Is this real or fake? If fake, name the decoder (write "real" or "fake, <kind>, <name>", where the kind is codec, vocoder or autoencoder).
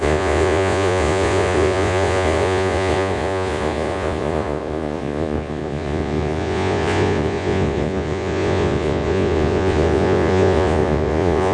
fake, vocoder, Vocos